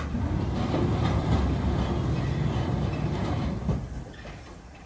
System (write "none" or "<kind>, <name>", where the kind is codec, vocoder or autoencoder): none